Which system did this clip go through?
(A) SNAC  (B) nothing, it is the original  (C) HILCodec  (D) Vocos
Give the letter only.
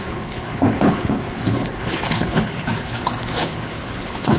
C